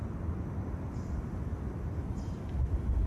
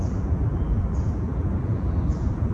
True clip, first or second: first